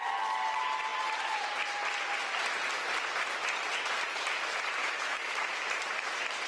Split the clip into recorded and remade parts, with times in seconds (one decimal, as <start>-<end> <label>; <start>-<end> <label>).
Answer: 0.0-4.8 recorded; 4.8-5.6 remade; 5.6-6.5 recorded